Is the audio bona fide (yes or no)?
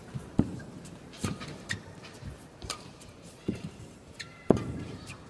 no